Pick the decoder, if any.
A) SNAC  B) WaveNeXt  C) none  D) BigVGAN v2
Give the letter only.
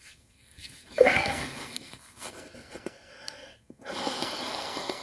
A